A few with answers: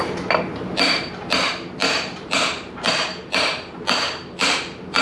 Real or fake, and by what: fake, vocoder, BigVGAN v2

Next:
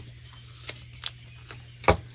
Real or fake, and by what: real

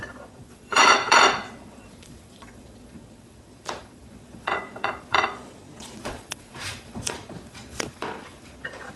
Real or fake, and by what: fake, vocoder, Vocos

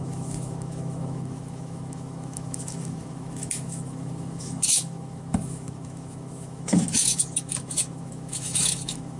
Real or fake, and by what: fake, autoencoder, DAC-VAE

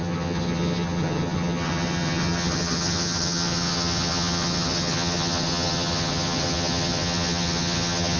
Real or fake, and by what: fake, vocoder, HiFi-GAN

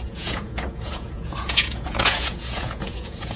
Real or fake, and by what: fake, vocoder, Vocos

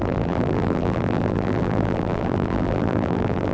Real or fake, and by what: fake, vocoder, BigVGAN v2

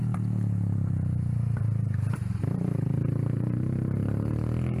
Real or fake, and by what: fake, vocoder, BigVGAN v2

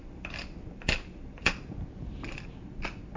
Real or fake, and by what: real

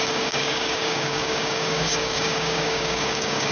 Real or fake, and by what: fake, codec, DAC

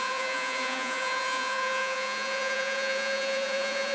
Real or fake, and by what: fake, vocoder, Vocos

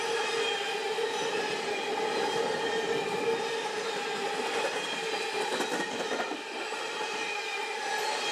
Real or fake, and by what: real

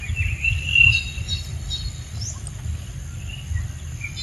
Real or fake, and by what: real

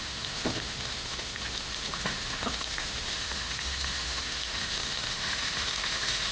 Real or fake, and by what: fake, autoencoder, DAC-VAE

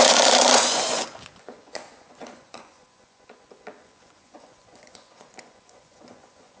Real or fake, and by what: fake, vocoder, Vocos